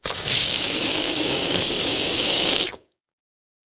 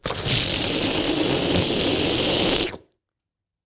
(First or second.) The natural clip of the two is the second